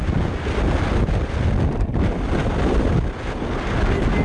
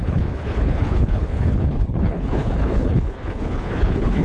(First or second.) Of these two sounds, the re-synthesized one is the second